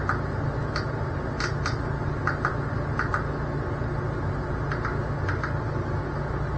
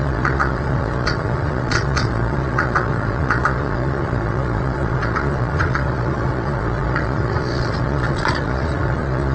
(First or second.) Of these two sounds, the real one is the first